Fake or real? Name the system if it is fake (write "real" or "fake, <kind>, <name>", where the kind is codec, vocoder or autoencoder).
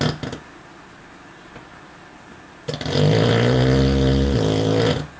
real